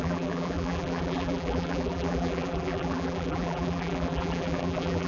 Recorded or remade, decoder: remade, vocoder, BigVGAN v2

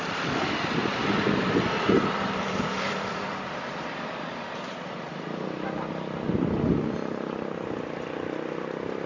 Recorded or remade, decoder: remade, vocoder, BigVGAN v2